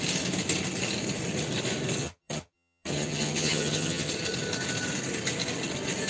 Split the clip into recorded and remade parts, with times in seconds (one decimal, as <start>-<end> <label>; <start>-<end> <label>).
0.0-2.0 recorded; 2.0-4.1 remade; 4.1-6.1 recorded